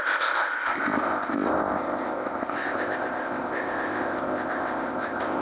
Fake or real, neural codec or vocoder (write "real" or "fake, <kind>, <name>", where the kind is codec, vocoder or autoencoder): fake, codec, ZipCodec